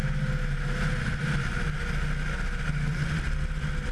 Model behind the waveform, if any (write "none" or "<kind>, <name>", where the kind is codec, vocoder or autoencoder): none